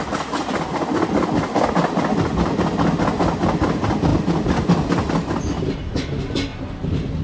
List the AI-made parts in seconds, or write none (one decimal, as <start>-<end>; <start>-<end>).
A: none

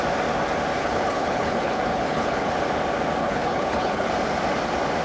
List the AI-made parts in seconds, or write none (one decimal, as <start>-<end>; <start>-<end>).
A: 0.7-2.6; 3.2-4.1

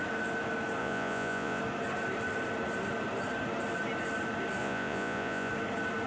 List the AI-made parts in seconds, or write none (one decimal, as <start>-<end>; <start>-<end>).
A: 0.8-1.6; 4.6-5.5

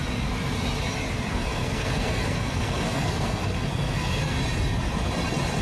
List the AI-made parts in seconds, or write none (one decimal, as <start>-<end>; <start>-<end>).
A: 1.3-4.4

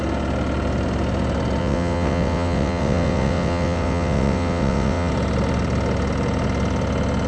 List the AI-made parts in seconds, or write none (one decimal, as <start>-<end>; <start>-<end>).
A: 1.6-5.1

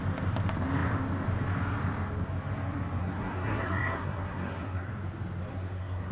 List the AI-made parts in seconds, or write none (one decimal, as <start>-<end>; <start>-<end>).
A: 3.0-4.9; 5.5-6.1

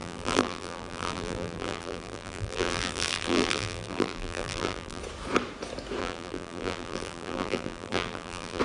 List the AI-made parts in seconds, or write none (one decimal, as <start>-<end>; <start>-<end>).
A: 0.0-5.0; 6.0-8.6

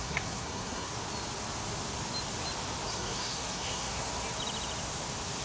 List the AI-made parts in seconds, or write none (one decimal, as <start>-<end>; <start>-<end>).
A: 0.0-0.9; 2.9-4.1